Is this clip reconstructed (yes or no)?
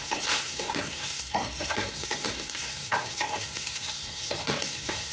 yes